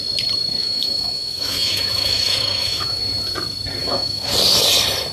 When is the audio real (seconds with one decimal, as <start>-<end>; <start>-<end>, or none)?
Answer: 0.0-0.6; 3.0-3.8; 4.3-5.1